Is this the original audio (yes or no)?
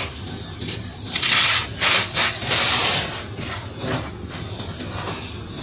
yes